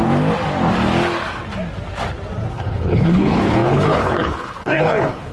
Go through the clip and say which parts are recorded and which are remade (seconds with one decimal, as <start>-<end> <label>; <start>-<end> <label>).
0.0-2.5 recorded; 2.5-5.3 remade